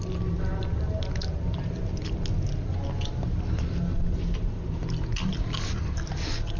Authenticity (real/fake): real